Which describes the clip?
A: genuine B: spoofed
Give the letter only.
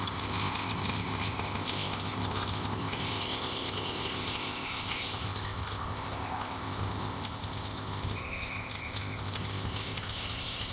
B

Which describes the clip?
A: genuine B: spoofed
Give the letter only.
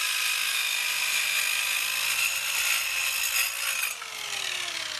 A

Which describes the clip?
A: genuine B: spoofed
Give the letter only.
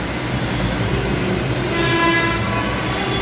A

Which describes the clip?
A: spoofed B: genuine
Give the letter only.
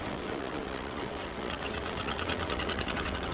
A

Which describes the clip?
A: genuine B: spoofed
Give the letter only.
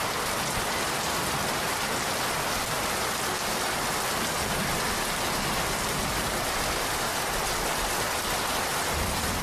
A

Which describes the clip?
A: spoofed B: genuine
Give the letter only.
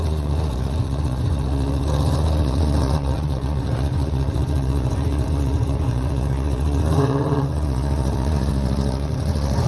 A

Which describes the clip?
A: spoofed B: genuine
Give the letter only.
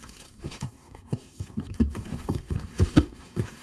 A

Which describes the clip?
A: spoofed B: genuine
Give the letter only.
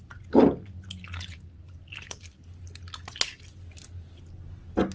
B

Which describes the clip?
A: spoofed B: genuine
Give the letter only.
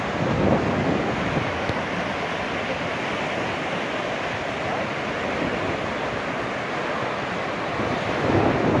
B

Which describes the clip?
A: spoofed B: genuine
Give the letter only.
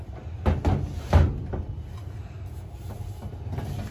B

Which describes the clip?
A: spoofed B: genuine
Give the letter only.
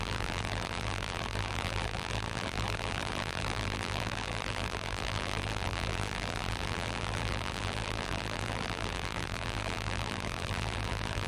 A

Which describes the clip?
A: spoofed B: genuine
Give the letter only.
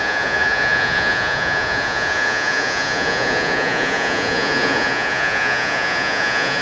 A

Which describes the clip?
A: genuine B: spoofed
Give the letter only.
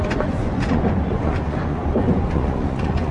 B